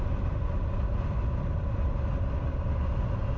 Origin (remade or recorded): recorded